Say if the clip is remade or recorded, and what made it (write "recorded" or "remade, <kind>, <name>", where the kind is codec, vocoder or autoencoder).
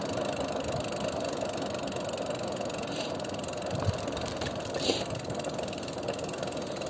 recorded